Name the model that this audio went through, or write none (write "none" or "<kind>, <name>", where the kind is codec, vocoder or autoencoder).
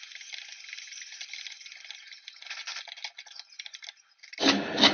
none